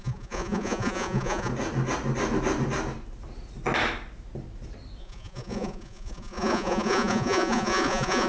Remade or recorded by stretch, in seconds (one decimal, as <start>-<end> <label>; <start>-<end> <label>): 0.0-1.5 remade; 1.5-5.0 recorded; 5.0-8.3 remade